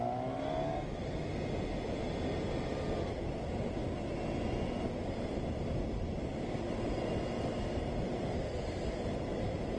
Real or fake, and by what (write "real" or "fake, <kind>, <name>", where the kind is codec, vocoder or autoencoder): real